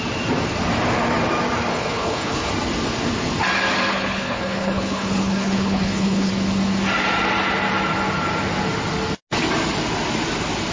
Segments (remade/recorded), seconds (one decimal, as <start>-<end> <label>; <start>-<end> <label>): 0.0-1.7 recorded; 1.7-2.5 remade; 2.5-3.9 recorded; 3.9-6.3 remade; 6.3-10.7 recorded